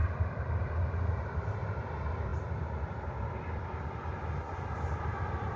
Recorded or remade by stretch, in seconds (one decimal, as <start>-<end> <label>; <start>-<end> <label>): 0.0-0.9 remade; 0.9-5.6 recorded